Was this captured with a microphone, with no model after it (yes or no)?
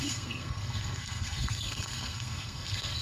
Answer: no